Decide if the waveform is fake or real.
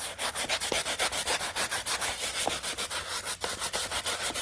real